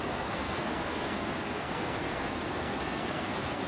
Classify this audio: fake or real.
fake